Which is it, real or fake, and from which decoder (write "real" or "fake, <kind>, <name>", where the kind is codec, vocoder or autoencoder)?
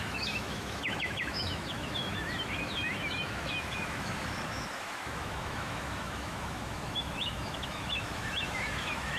fake, autoencoder, DAC-VAE